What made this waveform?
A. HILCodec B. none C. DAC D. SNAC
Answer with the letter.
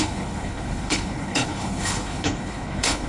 A